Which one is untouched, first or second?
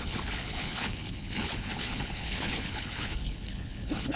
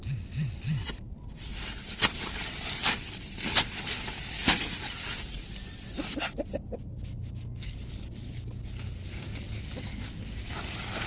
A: second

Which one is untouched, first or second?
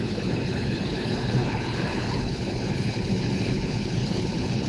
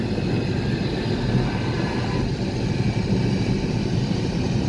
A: second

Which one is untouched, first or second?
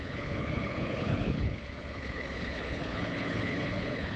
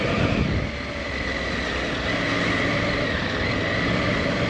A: second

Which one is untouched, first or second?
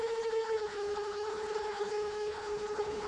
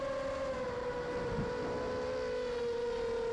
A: second